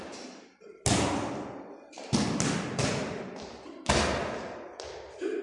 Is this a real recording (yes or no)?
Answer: yes